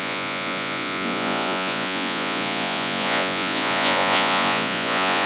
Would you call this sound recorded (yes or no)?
no